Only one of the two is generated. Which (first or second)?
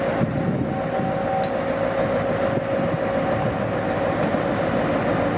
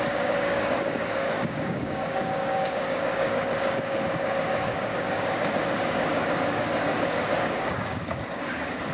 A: second